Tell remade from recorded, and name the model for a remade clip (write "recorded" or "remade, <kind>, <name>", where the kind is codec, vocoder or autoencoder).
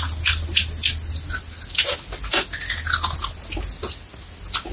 recorded